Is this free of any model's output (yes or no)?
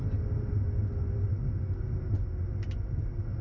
yes